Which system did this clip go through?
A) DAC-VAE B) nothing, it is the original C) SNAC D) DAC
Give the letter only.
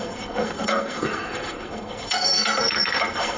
C